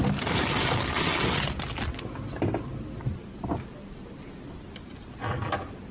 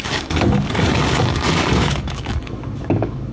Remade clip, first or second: second